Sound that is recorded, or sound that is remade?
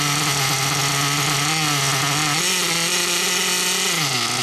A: recorded